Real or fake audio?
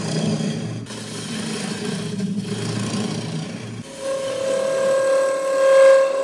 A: real